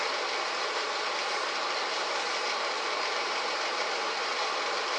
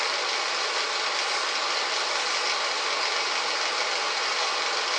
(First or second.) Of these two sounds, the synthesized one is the first